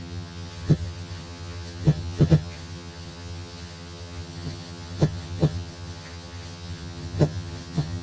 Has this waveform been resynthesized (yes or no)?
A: yes